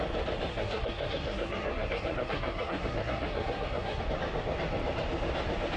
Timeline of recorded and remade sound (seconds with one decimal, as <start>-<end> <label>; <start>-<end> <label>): 0.0-0.5 recorded; 0.5-4.0 remade; 4.0-5.8 recorded